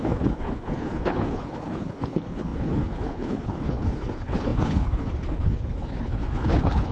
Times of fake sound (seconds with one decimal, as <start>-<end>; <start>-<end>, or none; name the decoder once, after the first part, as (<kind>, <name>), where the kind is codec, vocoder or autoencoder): 0.0-6.9 (codec, HILCodec)